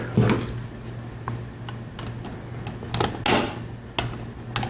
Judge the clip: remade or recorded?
recorded